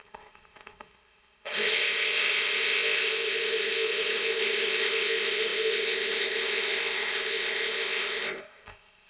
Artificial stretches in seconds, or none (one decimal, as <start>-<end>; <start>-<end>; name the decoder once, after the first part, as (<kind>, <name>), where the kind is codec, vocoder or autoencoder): 0.0-9.1 (codec, ZipCodec)